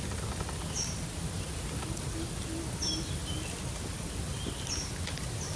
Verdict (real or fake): real